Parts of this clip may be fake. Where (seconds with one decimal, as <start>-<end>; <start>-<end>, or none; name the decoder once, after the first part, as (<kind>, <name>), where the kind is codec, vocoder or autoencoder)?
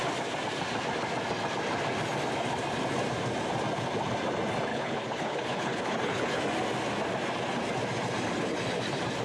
4.7-6.4 (codec, HILCodec)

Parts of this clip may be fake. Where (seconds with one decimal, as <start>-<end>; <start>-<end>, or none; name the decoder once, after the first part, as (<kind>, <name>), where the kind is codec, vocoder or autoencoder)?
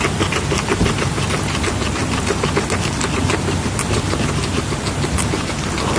none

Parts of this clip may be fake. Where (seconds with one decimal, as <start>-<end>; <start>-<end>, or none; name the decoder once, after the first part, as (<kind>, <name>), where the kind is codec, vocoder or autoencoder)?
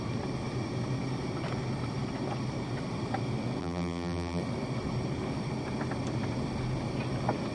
3.6-4.4 (vocoder, BigVGAN v2)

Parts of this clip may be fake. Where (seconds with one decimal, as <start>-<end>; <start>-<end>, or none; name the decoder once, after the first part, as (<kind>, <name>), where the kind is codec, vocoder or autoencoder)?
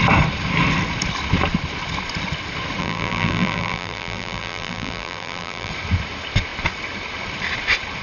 2.8-5.7 (vocoder, BigVGAN v2)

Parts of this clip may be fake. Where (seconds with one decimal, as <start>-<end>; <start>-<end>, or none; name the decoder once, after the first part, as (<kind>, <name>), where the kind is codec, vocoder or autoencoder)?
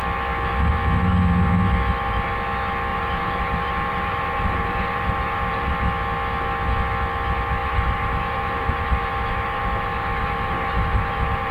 2.9-5.7 (vocoder, BigVGAN v2); 7.6-11.5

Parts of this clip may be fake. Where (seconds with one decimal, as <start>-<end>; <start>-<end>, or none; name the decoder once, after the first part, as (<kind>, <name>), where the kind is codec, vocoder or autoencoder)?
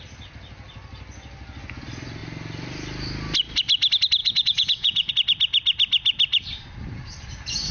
4.2-5.1 (vocoder, Vocos)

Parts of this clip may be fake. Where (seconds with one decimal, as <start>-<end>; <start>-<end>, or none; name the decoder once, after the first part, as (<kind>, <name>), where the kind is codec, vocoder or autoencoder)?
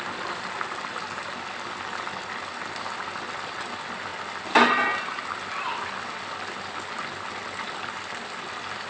none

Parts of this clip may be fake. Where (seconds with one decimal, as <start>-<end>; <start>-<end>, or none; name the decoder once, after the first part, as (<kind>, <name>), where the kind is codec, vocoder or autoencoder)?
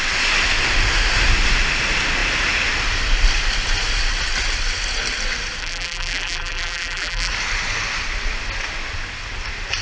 5.6-7.3 (vocoder, BigVGAN v2)